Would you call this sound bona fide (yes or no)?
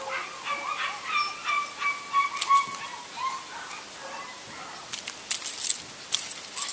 yes